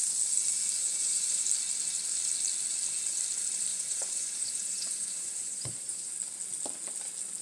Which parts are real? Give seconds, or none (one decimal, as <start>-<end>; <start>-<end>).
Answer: 0.0-0.8; 1.4-3.7; 6.1-7.4